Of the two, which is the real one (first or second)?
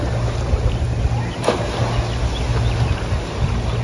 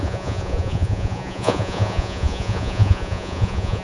first